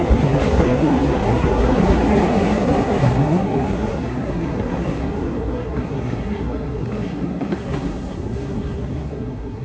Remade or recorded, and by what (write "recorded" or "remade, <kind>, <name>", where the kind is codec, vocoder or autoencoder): remade, codec, SNAC